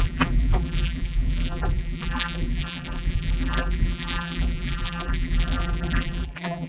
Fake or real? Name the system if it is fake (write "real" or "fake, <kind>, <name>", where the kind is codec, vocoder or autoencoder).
fake, vocoder, BigVGAN v2